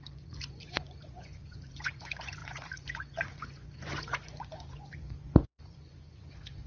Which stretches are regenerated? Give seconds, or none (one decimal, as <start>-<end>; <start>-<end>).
0.0-6.7